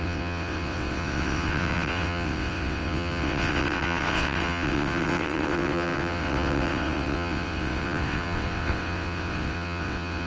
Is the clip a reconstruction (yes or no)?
yes